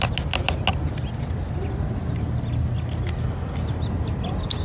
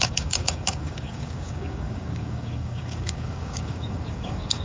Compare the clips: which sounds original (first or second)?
first